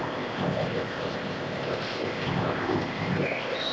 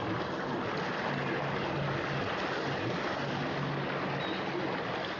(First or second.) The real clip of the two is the second